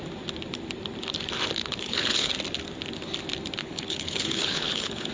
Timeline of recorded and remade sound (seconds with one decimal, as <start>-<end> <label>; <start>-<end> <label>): 0.0-1.6 recorded; 1.6-2.3 remade; 2.3-3.6 recorded; 3.6-5.1 remade